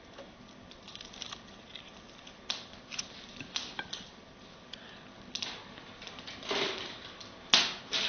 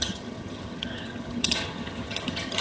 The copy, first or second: second